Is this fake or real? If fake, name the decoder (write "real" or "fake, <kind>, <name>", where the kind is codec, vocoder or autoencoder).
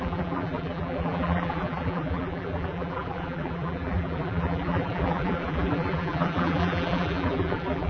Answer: fake, vocoder, BigVGAN v2